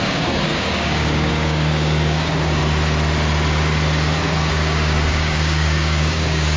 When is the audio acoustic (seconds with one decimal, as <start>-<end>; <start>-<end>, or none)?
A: 2.6-4.5